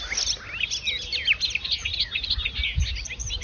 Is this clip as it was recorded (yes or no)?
yes